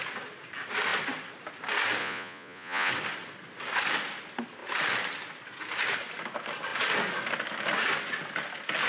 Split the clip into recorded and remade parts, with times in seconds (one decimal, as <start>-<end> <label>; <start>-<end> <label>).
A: 0.0-2.0 recorded; 2.0-2.9 remade; 2.9-8.9 recorded